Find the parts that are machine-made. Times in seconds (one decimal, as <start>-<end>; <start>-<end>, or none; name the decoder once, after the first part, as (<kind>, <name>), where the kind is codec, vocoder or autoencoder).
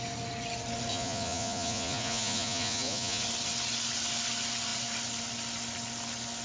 0.9-3.2 (vocoder, Vocos)